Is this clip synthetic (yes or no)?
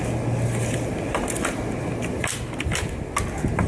no